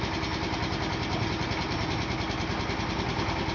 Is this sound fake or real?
real